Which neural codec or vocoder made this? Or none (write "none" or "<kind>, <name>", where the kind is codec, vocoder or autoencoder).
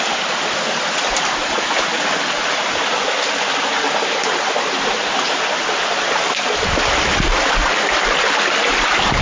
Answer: none